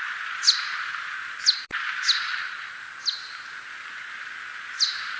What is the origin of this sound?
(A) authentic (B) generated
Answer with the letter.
A